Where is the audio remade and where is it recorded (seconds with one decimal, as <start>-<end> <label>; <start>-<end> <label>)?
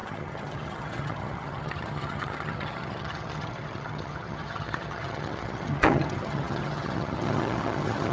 0.0-8.1 remade